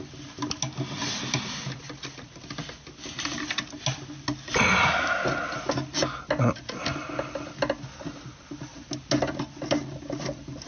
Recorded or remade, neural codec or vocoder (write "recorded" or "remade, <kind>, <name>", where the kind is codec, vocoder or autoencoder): recorded